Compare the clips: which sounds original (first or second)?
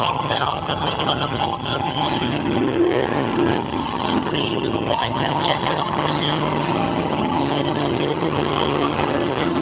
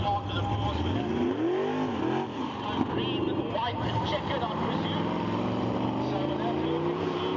second